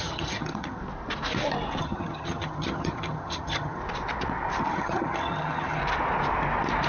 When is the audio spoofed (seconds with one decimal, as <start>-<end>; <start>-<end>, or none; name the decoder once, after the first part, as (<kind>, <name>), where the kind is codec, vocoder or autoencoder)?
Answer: 0.0-0.8 (vocoder, HiFi-GAN); 1.8-3.8; 4.6-5.8